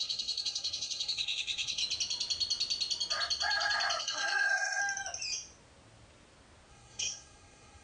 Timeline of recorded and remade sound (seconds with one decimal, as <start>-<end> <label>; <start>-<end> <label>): 0.0-1.8 remade; 1.8-4.0 recorded; 4.0-4.8 remade; 4.8-6.7 recorded; 6.7-7.8 remade